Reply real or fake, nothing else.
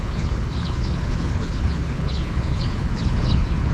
fake